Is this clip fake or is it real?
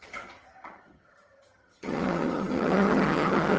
fake